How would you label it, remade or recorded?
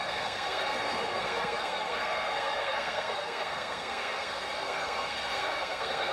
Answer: remade